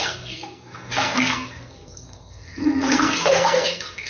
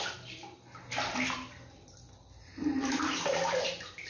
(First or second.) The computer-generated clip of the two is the first